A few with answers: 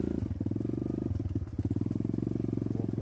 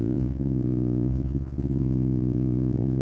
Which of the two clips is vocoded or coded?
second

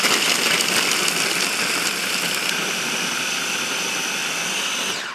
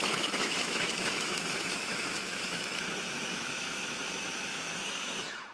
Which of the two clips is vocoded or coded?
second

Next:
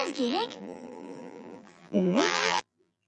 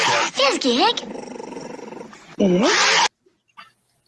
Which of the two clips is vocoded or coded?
first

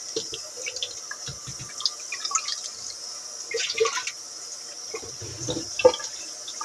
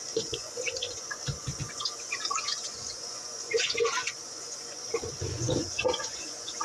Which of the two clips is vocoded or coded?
second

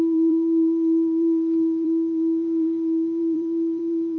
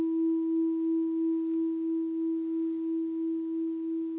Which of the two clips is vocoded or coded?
first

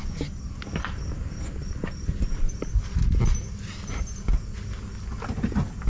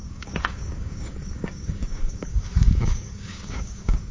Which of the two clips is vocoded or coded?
second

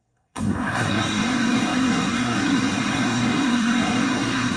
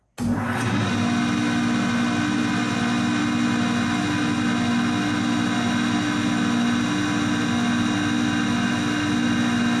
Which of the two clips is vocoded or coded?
first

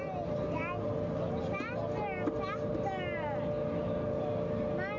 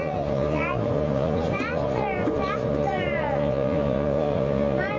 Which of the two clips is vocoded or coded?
second